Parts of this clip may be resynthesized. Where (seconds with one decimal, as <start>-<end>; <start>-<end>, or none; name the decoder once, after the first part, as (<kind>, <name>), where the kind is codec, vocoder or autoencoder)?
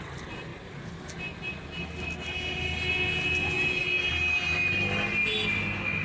none